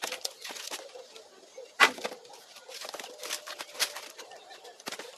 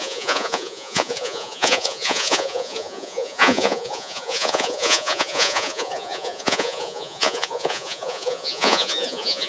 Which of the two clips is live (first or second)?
first